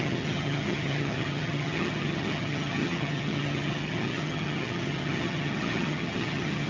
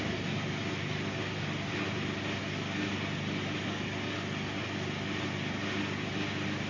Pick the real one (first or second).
second